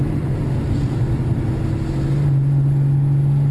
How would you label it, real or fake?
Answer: real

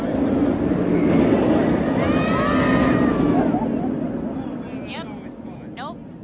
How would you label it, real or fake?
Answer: real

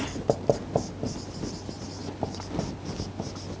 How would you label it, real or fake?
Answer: real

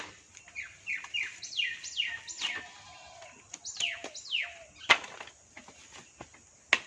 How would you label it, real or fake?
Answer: real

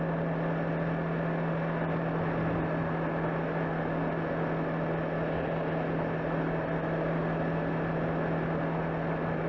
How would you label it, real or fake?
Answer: real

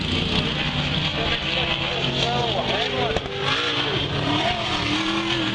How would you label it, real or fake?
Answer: real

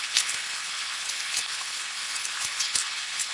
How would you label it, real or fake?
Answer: fake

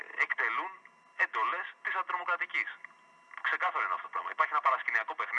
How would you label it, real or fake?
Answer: real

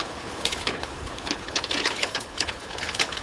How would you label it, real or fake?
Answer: fake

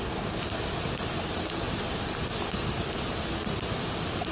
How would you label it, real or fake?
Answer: real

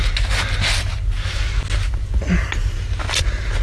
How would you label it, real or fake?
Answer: real